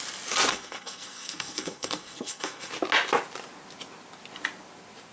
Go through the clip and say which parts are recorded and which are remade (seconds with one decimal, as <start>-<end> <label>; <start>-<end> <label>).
0.0-0.5 recorded; 0.5-2.7 remade; 2.7-5.1 recorded